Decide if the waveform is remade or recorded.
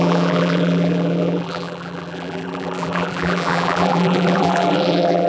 remade